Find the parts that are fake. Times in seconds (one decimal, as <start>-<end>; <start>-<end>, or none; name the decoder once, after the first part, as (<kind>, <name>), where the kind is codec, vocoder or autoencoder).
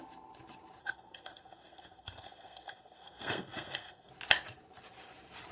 0.8-4.1 (codec, SNAC)